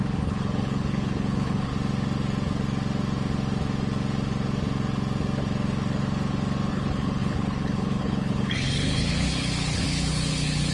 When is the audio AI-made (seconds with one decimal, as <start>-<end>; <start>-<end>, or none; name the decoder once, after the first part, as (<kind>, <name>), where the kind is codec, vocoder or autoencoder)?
0.0-1.7 (codec, HILCodec); 6.7-10.7